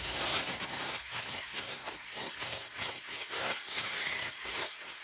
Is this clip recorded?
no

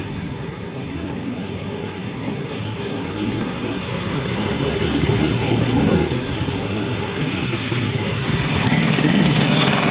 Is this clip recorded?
no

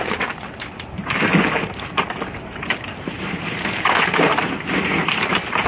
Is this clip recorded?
no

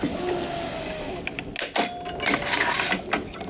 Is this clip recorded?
yes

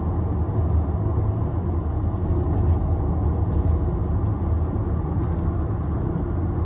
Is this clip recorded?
yes